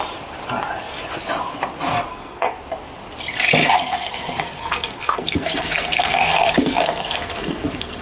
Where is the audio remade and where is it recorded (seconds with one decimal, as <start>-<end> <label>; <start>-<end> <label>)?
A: 0.0-2.1 recorded; 2.1-2.6 remade; 2.6-3.6 recorded; 3.6-8.0 remade